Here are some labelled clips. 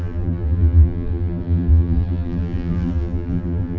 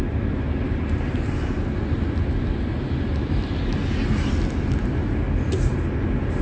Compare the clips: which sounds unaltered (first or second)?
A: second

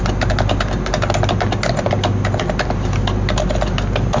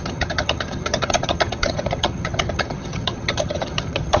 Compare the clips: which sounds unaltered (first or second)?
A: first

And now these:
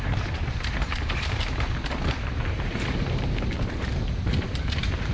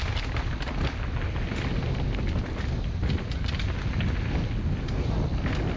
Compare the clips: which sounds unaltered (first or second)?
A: second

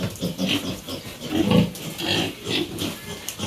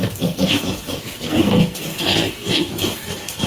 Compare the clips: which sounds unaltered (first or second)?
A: first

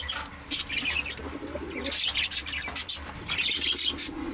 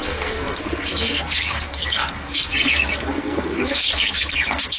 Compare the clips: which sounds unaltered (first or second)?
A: first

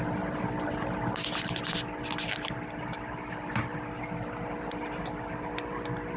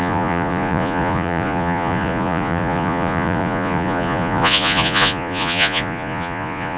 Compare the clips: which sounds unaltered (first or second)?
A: first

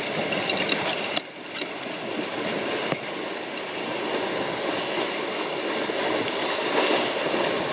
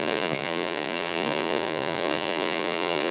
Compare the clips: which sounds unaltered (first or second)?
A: first